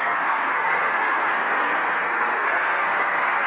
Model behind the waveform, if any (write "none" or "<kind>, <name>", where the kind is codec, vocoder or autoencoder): codec, SNAC